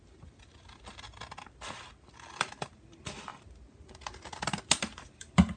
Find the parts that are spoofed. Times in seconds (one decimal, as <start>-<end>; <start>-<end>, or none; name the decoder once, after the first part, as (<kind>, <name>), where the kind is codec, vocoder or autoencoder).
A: none